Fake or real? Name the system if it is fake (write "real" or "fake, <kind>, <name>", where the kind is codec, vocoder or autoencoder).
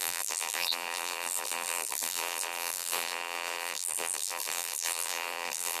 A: fake, vocoder, BigVGAN v2